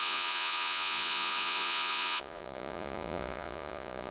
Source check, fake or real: fake